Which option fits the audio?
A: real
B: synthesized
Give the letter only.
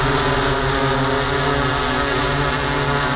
A